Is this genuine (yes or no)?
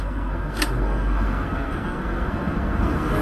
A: no